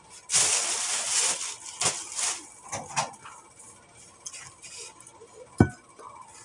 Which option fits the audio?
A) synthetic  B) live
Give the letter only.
B